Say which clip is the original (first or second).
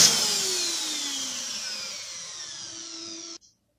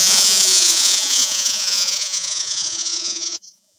first